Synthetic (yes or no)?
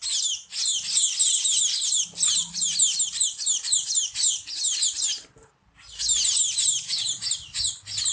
no